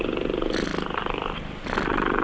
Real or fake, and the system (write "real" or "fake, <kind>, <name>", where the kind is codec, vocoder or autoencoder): real